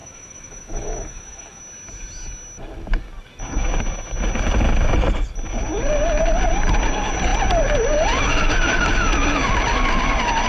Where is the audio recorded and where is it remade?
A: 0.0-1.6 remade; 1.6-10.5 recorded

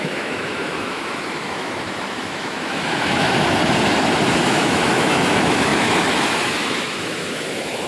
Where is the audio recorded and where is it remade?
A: 0.0-3.6 remade; 3.6-4.3 recorded; 4.3-7.9 remade

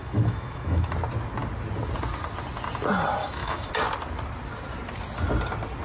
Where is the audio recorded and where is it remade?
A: 0.0-0.9 remade; 0.9-3.2 recorded; 3.2-3.7 remade; 3.7-5.8 recorded